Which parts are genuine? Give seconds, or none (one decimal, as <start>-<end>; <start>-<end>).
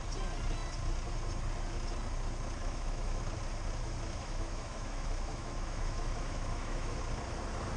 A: 0.0-2.6; 3.2-4.2; 7.0-7.8